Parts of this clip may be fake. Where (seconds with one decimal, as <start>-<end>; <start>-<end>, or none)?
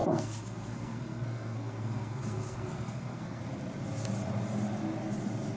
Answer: 0.0-3.4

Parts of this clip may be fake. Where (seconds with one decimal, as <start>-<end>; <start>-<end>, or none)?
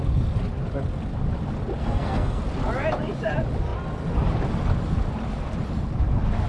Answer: 1.8-2.4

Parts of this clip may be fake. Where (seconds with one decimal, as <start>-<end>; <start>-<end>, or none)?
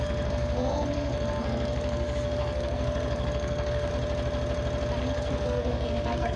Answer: 0.0-3.9; 5.0-6.4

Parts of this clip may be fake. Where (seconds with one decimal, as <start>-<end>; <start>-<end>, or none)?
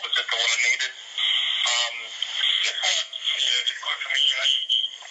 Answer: 2.5-5.1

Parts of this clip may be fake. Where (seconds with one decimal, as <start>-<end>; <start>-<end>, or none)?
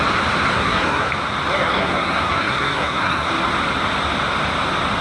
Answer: 0.5-1.1; 1.7-3.3